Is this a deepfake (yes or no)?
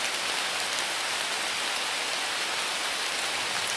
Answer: no